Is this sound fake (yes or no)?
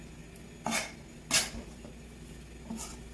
no